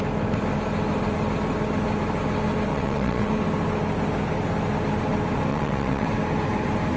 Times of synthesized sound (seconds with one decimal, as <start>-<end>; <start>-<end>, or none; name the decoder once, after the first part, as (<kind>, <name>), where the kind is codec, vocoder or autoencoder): 2.7-3.3 (vocoder, WaveNeXt); 5.5-6.1